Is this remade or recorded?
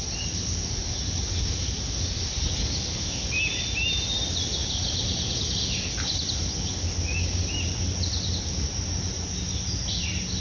recorded